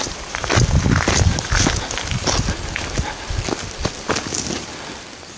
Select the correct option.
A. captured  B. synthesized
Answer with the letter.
A